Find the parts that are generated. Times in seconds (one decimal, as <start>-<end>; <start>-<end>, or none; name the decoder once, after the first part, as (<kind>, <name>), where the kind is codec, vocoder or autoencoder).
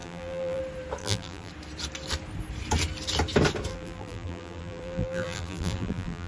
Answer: 0.0-0.6 (vocoder, BigVGAN v2); 1.0-1.5; 3.7-6.3